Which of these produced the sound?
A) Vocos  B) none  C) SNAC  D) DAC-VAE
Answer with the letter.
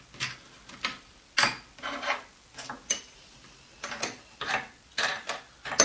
B